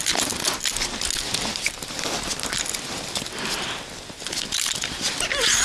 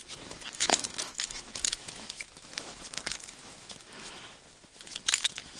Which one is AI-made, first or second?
second